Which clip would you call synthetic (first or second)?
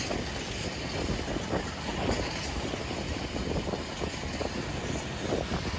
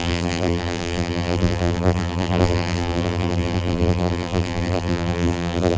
second